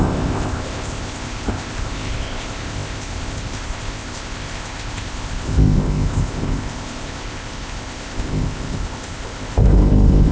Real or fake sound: fake